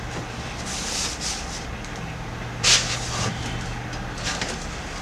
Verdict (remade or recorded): recorded